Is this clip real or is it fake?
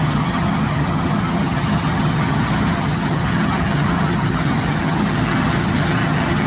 fake